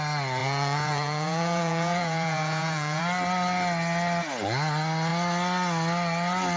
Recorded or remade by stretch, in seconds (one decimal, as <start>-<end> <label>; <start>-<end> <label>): 0.0-0.4 recorded; 0.4-3.0 remade; 3.0-6.6 recorded